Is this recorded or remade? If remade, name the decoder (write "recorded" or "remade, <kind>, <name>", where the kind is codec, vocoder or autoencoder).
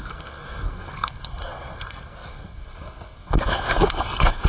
remade, codec, SNAC